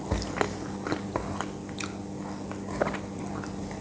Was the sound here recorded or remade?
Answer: recorded